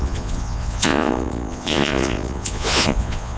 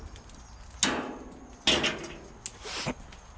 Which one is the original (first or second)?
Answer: second